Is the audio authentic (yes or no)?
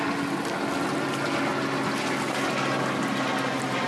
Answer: yes